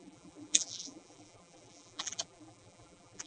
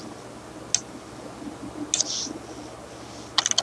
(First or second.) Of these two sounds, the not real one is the first